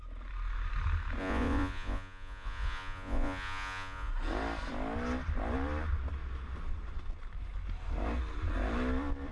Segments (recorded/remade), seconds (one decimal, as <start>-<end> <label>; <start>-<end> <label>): 0.0-1.2 recorded; 1.2-4.1 remade; 4.1-9.3 recorded